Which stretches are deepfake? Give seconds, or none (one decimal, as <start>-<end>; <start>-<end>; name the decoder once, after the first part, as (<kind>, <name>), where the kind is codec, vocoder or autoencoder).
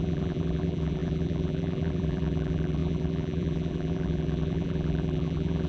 0.0-5.7 (vocoder, BigVGAN v2)